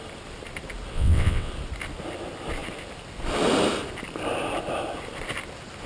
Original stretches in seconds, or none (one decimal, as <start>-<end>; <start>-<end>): 0.0-0.9; 1.5-5.9